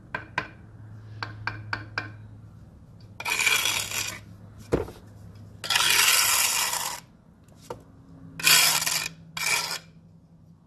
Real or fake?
real